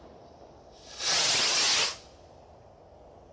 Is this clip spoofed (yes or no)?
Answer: no